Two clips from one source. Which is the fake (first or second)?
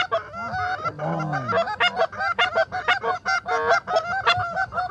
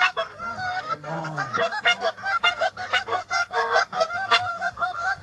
second